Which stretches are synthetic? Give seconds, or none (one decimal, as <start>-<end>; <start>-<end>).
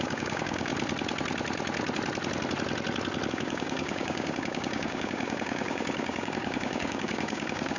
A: 0.0-0.7; 3.3-7.8